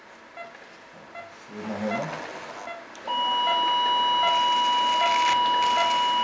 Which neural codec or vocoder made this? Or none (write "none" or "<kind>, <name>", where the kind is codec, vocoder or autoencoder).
none